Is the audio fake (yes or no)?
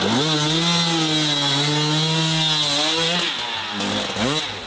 no